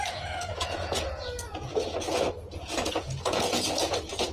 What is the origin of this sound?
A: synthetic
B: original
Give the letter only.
A